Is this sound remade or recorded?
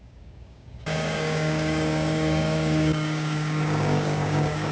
remade